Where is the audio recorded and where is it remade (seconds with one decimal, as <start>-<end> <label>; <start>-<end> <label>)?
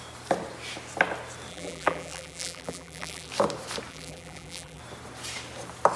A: 0.0-1.5 recorded; 1.5-3.3 remade; 3.3-3.9 recorded; 3.9-4.8 remade; 4.8-6.0 recorded